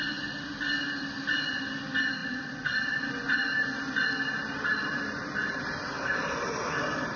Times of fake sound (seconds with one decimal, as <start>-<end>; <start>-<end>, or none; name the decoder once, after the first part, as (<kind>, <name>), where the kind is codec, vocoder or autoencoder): 2.2-3.1 (vocoder, BigVGAN v2); 4.8-6.4